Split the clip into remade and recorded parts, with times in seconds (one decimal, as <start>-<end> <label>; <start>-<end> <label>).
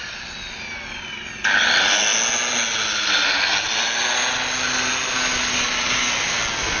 0.0-6.8 recorded